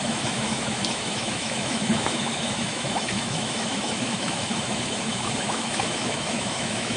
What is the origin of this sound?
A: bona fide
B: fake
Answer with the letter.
B